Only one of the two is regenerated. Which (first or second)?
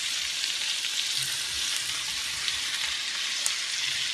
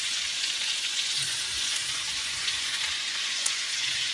second